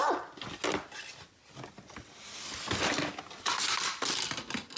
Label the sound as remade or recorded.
recorded